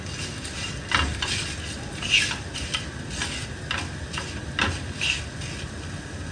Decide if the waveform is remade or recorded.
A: recorded